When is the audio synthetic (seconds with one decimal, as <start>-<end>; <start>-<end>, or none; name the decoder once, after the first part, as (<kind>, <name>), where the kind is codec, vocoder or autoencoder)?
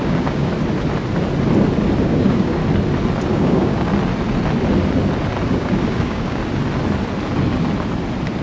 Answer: 0.0-0.5 (codec, DAC); 2.0-2.6; 3.3-3.9; 5.5-6.4